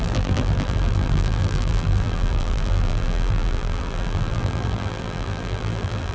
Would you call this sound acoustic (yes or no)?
no